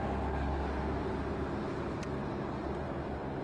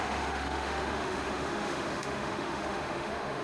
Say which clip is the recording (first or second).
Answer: first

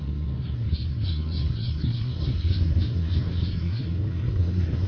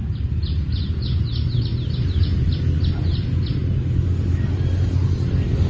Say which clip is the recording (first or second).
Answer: second